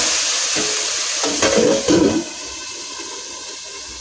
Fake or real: real